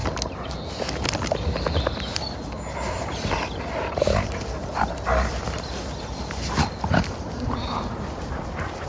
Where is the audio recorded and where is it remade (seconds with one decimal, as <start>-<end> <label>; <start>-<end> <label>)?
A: 0.0-8.9 recorded